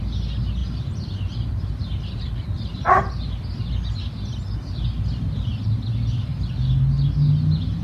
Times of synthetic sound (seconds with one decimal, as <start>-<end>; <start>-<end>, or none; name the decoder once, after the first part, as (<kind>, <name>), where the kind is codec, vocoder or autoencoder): 0.6-3.0 (vocoder, BigVGAN v2)